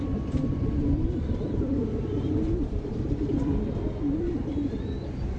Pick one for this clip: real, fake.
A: fake